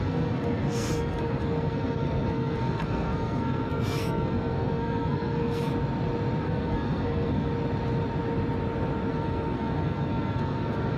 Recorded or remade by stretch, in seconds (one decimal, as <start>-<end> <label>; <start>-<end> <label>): 0.0-5.7 remade; 5.7-6.4 recorded; 6.4-7.5 remade; 7.5-9.1 recorded; 9.1-11.0 remade